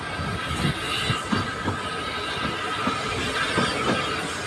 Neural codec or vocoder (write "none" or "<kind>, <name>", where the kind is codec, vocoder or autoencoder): none